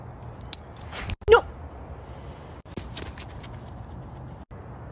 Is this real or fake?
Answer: real